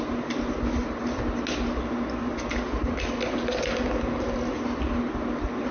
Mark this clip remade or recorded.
recorded